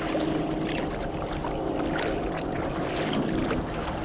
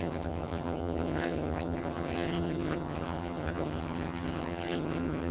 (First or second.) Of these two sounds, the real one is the first